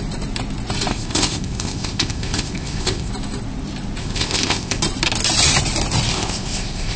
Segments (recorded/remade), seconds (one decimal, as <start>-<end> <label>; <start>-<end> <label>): 0.0-0.9 recorded; 0.9-3.1 remade; 3.1-4.0 recorded; 4.0-4.8 remade; 4.8-6.1 recorded; 6.1-7.0 remade

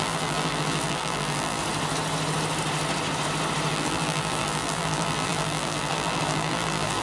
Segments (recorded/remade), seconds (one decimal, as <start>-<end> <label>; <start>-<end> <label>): 0.0-1.6 remade; 1.6-3.7 recorded; 3.7-7.0 remade

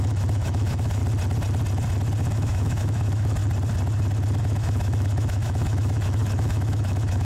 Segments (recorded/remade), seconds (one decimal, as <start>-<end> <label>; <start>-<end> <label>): 0.0-1.0 remade; 1.0-2.2 recorded; 2.2-3.4 remade; 3.4-4.4 recorded; 4.4-7.2 remade

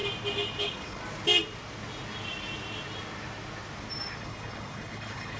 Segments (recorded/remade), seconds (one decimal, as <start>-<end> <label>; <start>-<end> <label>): 0.0-0.6 recorded; 0.6-1.0 remade; 1.0-4.2 recorded; 4.2-5.4 remade

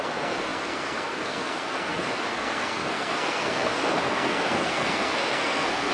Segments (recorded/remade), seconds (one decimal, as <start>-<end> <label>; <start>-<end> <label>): 0.0-5.9 remade

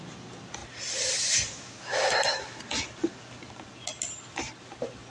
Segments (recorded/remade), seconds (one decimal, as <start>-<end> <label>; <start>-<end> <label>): 0.0-5.1 recorded

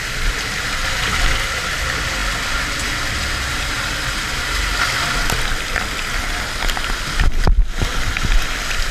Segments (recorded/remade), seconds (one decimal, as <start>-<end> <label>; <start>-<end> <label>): 0.0-8.9 recorded

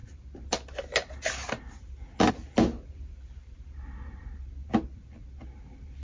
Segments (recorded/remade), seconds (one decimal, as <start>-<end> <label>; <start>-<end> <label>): 0.0-6.0 recorded